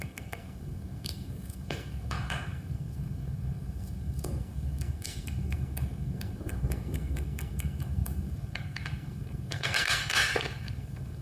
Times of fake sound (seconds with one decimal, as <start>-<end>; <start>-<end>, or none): 0.0-11.2